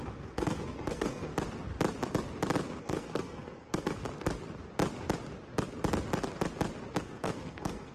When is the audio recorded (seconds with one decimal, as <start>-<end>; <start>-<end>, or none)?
1.3-2.8; 4.0-7.0